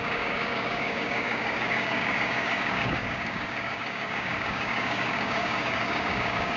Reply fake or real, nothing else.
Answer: fake